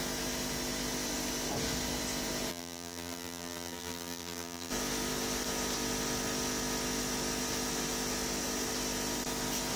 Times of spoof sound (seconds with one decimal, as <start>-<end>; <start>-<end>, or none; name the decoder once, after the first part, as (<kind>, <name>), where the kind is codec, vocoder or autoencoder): 2.5-4.7 (vocoder, BigVGAN v2)